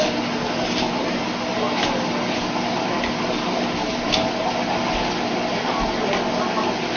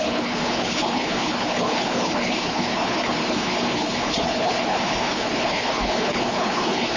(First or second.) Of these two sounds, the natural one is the first